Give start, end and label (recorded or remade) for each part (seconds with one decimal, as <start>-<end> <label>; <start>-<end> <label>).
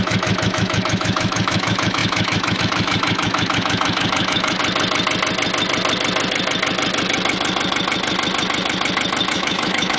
0.0-4.6 remade; 4.6-9.3 recorded; 9.3-10.0 remade